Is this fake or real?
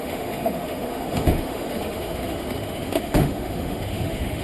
fake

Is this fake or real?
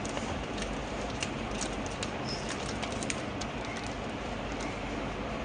real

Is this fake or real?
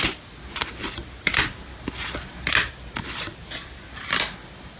real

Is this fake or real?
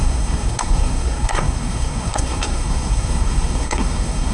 fake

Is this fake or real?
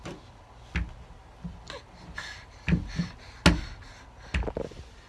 real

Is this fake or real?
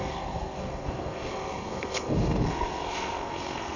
fake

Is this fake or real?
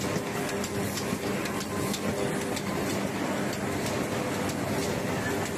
real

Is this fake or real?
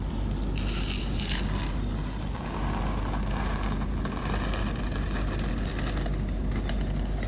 real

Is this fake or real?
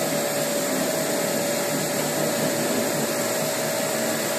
real